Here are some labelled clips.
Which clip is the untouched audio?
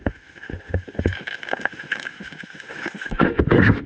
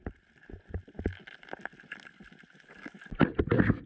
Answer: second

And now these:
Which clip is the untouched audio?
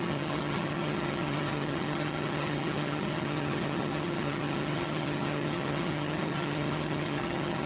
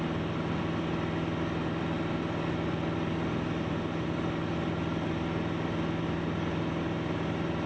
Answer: second